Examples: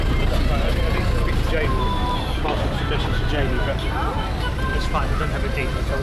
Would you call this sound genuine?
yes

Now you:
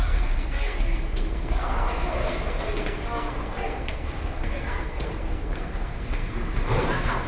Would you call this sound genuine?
no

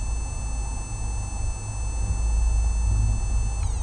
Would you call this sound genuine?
yes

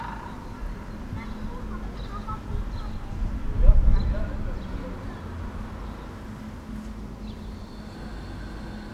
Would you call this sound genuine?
yes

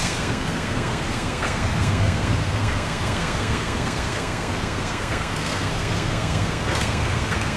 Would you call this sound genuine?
no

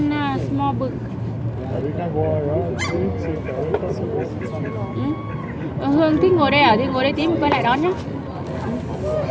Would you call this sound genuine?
yes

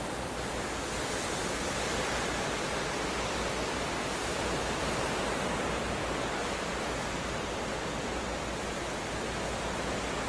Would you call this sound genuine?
yes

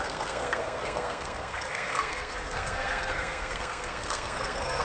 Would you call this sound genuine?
no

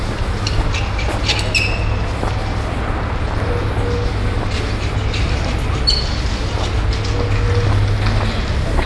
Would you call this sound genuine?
yes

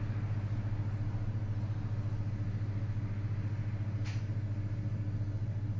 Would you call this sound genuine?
yes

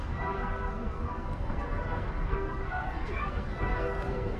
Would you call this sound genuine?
no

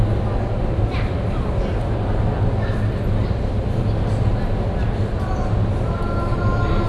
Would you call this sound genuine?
yes